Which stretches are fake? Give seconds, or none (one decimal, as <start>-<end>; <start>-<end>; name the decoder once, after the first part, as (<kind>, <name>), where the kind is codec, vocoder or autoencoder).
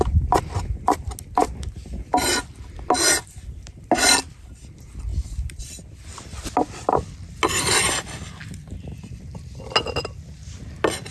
none